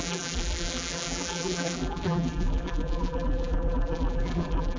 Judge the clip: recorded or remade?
remade